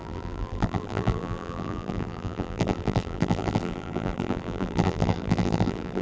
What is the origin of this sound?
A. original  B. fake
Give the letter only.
B